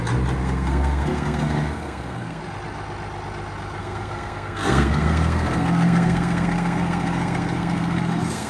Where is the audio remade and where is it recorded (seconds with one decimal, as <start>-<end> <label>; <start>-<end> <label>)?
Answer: 0.0-0.4 recorded; 0.4-2.4 remade; 2.4-3.8 recorded; 3.8-8.5 remade